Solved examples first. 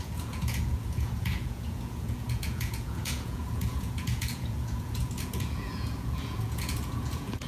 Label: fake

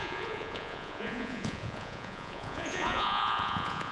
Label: fake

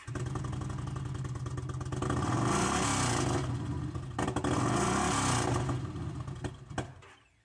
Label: real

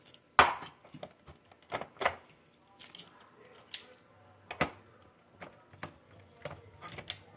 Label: real